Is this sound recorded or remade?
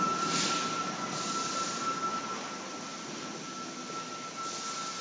recorded